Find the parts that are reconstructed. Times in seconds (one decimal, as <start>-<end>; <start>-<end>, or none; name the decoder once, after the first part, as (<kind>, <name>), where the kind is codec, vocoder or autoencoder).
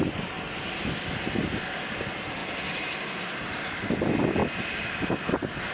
none